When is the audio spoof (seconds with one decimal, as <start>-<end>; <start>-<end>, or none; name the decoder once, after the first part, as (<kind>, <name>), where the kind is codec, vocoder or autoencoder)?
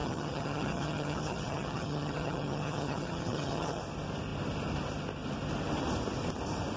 0.0-3.8 (vocoder, HiFi-GAN)